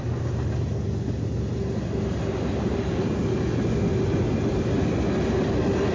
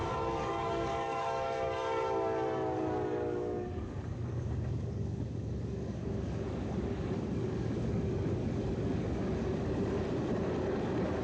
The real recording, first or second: first